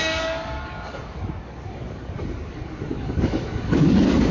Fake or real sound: fake